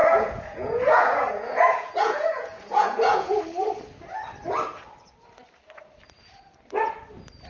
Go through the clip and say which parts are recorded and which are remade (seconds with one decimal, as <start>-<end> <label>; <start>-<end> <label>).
0.0-3.4 remade; 3.4-7.5 recorded